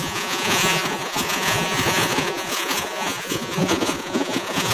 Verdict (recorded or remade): remade